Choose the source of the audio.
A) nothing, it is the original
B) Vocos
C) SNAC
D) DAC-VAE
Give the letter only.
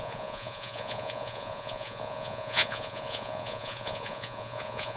B